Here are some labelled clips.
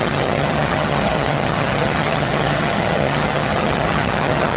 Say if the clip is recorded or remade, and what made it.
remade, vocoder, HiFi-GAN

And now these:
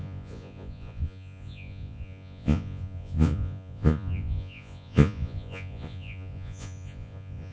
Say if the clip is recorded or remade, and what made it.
remade, vocoder, Vocos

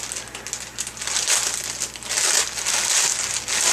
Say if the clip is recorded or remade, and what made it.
recorded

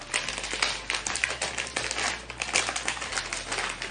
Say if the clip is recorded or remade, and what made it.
recorded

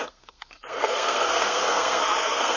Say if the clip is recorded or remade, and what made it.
remade, codec, SNAC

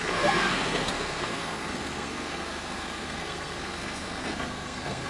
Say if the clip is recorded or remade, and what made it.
remade, codec, SNAC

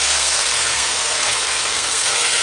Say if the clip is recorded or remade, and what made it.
remade, codec, SNAC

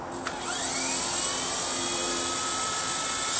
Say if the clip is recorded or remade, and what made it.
recorded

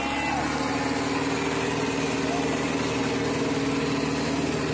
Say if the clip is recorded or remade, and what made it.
recorded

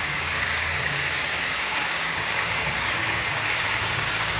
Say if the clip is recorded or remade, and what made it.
remade, codec, DAC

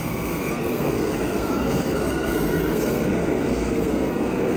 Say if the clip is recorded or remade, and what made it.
remade, codec, SNAC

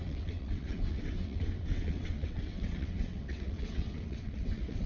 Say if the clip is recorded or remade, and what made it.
remade, vocoder, WaveNeXt